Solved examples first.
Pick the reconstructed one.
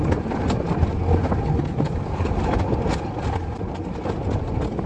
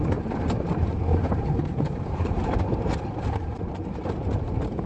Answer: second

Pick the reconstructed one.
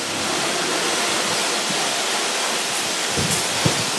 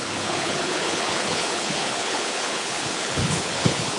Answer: second